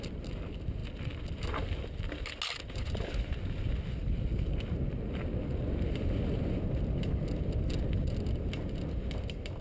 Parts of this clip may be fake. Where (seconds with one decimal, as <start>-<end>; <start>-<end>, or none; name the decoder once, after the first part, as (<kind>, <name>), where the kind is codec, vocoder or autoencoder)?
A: none